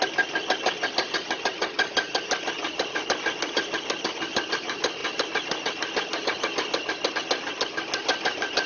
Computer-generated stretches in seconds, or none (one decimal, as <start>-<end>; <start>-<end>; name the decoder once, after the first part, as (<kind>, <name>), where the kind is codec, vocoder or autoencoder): none